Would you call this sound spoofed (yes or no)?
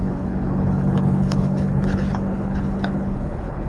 yes